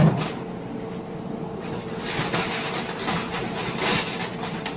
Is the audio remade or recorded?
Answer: recorded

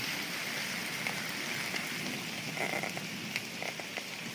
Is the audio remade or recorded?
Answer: recorded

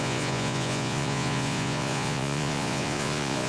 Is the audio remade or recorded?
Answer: remade